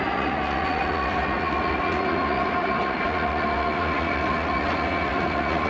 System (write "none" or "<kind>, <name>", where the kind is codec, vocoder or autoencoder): vocoder, Vocos